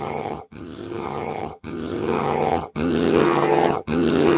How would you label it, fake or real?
fake